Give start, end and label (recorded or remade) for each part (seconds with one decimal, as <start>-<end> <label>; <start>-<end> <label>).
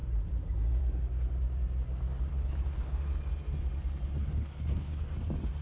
0.0-2.3 recorded; 2.3-2.9 remade; 2.9-4.2 recorded; 4.2-5.0 remade; 5.0-5.6 recorded